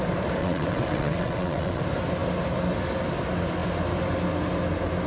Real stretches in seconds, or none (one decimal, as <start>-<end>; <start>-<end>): 0.0-0.4; 1.8-5.1